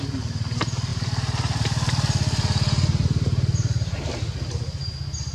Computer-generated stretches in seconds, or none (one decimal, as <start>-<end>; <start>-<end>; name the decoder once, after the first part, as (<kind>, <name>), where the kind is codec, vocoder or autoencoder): none